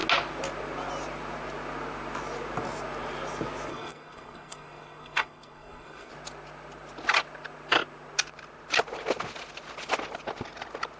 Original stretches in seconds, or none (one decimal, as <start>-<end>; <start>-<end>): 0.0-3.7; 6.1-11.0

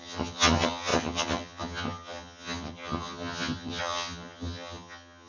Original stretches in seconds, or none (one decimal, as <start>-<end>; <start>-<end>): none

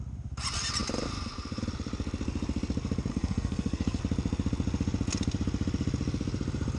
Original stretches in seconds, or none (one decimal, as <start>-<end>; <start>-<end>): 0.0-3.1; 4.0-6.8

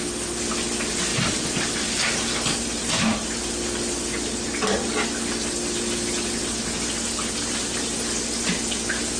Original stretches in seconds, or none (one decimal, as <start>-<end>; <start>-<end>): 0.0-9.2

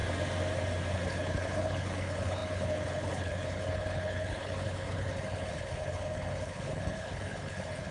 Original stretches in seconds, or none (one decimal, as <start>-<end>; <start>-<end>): 0.0-0.9

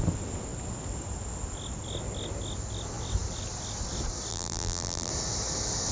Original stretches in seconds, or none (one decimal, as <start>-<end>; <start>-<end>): 0.0-4.3; 5.1-5.9